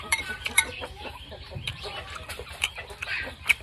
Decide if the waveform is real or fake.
fake